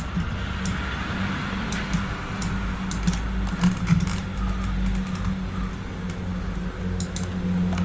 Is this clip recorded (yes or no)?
yes